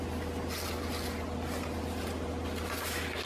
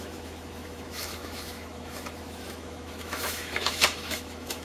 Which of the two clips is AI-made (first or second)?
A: second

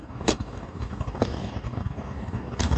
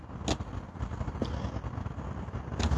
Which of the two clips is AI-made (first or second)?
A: first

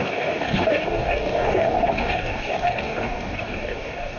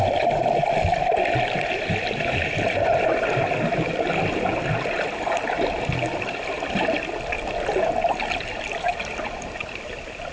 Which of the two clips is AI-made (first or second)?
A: first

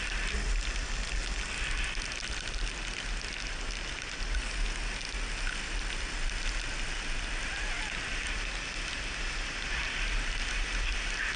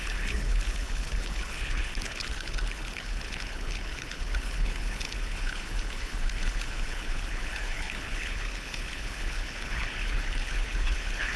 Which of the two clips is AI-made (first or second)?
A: second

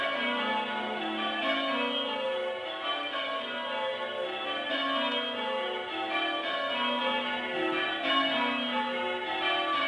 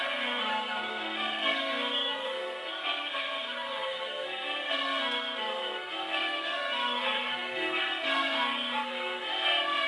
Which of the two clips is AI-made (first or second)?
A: second